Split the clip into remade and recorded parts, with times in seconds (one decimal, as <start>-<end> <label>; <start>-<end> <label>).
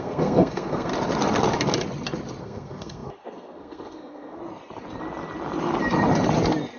0.0-0.9 remade; 0.9-2.4 recorded; 2.4-4.4 remade; 4.4-6.8 recorded